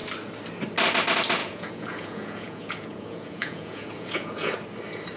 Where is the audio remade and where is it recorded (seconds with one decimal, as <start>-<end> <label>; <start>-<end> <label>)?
0.0-1.4 recorded; 1.4-4.5 remade; 4.5-5.2 recorded